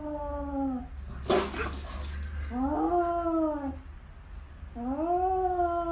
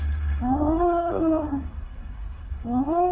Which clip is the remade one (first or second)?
second